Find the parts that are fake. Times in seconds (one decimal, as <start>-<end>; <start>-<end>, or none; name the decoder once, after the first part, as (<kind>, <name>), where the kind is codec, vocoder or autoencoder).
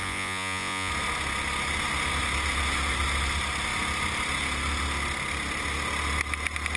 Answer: 0.0-0.9 (vocoder, Vocos)